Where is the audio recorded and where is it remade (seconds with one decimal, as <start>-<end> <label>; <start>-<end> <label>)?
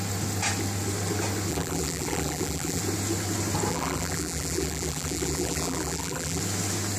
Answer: 0.0-1.5 recorded; 1.5-2.8 remade; 2.8-3.7 recorded; 3.7-6.4 remade; 6.4-7.0 recorded